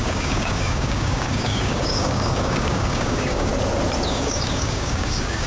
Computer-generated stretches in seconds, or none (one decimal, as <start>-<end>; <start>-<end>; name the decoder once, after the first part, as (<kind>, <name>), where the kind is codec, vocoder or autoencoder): 0.0-3.5 (codec, DAC); 4.1-5.5